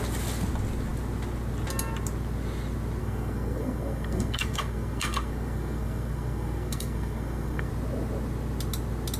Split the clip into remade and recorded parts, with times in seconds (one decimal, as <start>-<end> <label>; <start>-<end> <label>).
0.0-3.0 recorded; 3.0-7.7 remade; 7.7-9.2 recorded